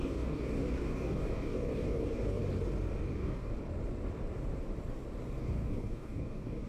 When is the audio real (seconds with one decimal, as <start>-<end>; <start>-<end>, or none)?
2.4-3.1; 3.5-5.4